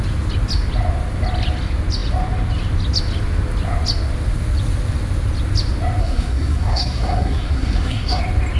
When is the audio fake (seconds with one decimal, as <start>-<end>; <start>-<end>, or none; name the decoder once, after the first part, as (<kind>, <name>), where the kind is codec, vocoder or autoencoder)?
6.0-8.2 (codec, SNAC)